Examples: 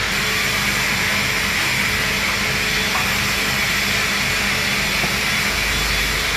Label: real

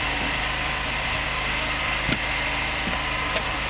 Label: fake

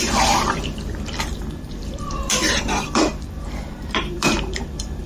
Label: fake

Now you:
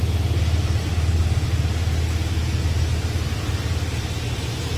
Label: real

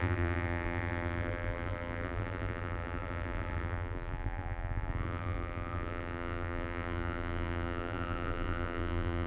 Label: fake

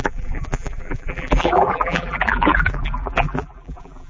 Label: fake